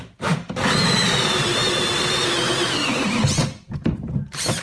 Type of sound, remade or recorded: recorded